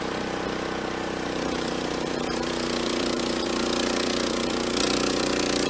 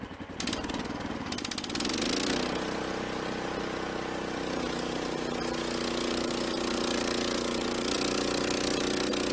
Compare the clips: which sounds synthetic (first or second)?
first